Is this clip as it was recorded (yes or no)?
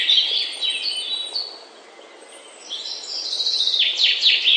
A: yes